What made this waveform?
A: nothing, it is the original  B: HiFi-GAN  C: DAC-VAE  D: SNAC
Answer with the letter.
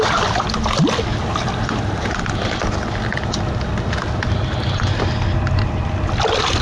A